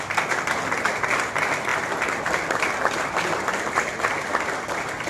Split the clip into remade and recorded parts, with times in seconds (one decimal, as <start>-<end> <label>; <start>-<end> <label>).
0.0-5.1 recorded